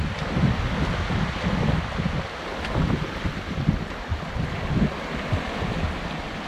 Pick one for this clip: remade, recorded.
recorded